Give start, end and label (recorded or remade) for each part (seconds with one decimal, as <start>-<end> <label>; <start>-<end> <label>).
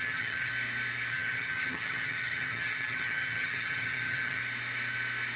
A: 0.0-0.5 remade; 0.5-1.1 recorded; 1.1-4.4 remade; 4.4-5.4 recorded